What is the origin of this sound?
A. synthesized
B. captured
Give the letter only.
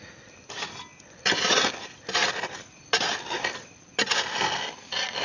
B